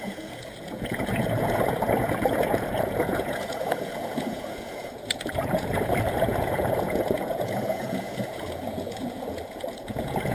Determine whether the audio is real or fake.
fake